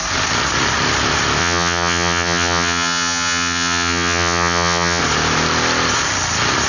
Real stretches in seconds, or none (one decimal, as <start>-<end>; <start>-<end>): 0.0-1.4; 5.0-6.7

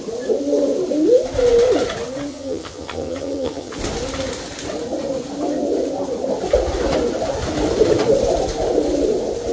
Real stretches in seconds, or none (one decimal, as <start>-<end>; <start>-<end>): 0.0-2.3; 3.7-9.5

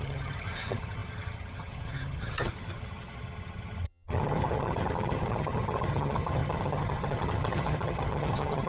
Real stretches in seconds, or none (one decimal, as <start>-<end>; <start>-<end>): none

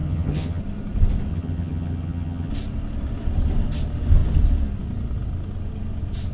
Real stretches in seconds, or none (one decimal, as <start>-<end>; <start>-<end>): 0.6-1.3; 2.5-6.3

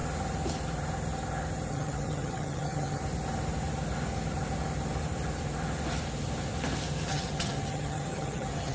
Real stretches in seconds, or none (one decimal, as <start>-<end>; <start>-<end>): 0.0-1.7; 3.0-7.1

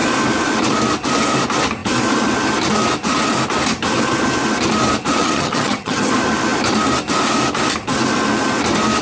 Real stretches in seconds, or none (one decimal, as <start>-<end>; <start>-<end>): 0.0-5.2; 6.1-9.0

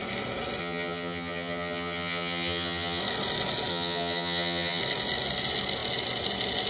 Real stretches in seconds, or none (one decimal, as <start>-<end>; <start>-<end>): 0.0-0.6; 3.0-3.7; 4.8-6.7

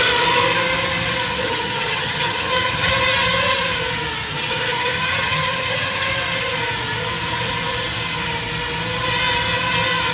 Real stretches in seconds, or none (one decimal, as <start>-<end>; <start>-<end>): 0.0-1.3; 2.9-4.3; 6.1-10.1